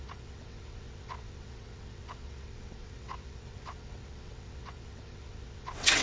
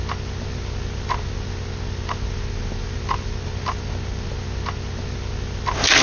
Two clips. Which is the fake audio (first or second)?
first